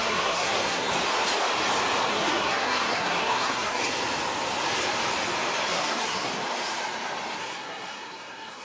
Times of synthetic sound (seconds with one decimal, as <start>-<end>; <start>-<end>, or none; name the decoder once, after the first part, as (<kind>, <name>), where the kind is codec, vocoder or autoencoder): 0.0-0.9 (codec, SNAC); 2.1-3.8; 5.7-6.3; 7.4-8.6

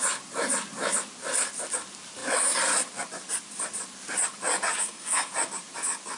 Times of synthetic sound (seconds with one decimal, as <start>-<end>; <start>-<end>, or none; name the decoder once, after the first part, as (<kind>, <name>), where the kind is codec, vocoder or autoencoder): 4.8-5.3 (codec, SNAC)

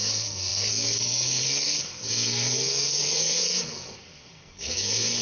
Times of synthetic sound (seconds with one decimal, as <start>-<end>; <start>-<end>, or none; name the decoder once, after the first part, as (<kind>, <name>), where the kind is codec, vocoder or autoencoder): 0.0-5.2 (codec, SNAC)

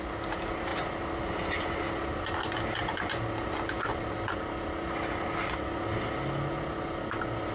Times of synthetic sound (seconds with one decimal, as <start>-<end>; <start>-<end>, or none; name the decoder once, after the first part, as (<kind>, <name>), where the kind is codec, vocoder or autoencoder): none